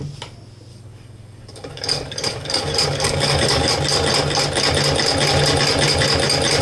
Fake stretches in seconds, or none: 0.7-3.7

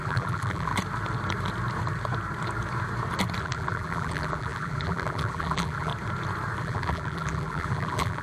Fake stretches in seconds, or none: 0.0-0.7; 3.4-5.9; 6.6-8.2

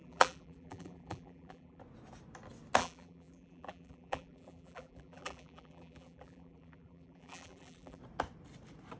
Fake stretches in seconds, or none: 0.0-1.8; 2.8-8.0

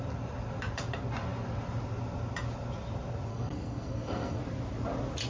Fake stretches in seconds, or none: 3.3-4.4

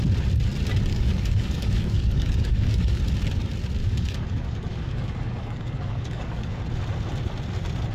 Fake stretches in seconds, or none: 0.9-3.0; 3.8-6.6

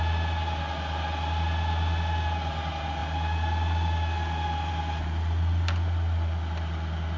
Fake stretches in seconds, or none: none

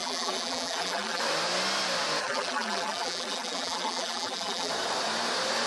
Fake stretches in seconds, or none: 0.0-1.2; 2.2-4.7